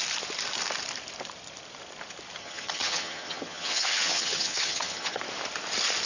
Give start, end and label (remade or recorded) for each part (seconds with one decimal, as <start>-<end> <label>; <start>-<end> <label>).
0.0-2.4 recorded; 2.4-5.2 remade; 5.2-6.1 recorded